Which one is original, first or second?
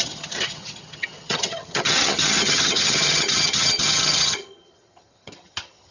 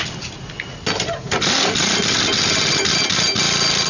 second